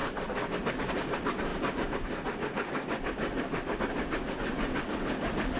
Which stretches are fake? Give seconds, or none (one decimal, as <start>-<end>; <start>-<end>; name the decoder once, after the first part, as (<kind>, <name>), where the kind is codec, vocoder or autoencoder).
none